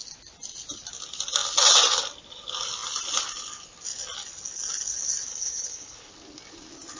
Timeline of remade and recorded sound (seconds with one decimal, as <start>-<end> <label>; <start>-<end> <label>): 0.0-5.3 recorded; 5.3-6.1 remade; 6.1-7.0 recorded